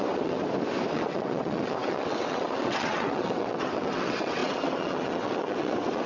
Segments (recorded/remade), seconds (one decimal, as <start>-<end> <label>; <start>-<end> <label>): 0.0-0.4 remade; 0.4-0.9 recorded; 0.9-6.1 remade